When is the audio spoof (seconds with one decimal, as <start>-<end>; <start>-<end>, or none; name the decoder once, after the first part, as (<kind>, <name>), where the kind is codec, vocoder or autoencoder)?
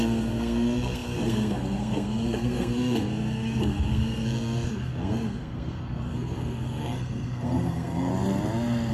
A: 0.0-8.1 (codec, SNAC)